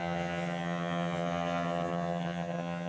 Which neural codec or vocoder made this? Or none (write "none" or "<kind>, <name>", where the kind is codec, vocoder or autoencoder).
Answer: vocoder, HiFi-GAN